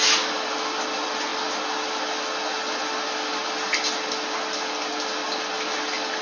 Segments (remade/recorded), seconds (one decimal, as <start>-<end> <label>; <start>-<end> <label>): 0.0-6.2 recorded